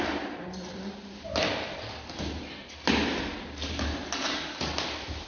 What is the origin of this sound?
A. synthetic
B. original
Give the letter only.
B